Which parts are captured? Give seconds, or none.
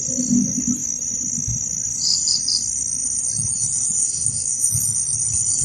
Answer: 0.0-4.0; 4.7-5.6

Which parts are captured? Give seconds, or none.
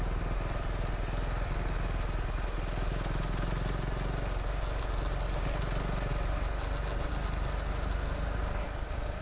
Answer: 0.0-9.2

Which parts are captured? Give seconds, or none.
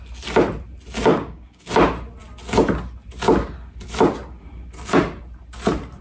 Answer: 0.0-1.1; 1.7-6.0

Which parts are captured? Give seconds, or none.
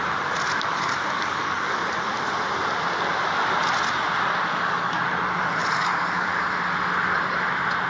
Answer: 0.0-0.7; 1.8-4.5; 5.0-5.6; 6.4-7.9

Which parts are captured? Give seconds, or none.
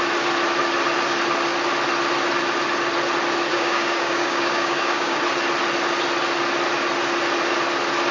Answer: 0.0-3.5; 5.2-8.1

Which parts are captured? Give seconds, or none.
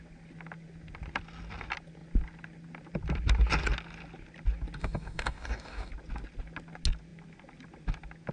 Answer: 0.0-4.8; 5.9-8.3